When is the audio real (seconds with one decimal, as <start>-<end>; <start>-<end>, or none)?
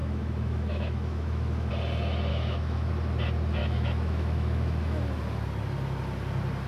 1.7-2.3; 2.9-3.6; 5.0-6.7